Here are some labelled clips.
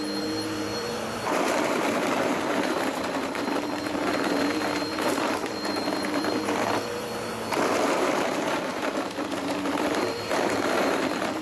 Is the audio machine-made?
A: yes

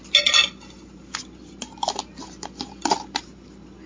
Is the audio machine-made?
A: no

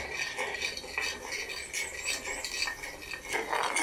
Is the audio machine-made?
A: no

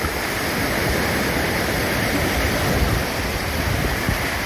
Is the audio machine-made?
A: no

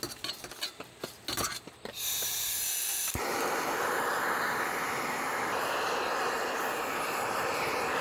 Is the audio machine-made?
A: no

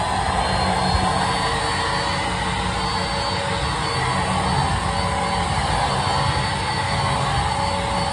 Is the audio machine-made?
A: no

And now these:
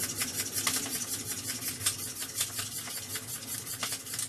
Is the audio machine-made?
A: no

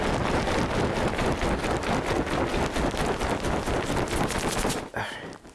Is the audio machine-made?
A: no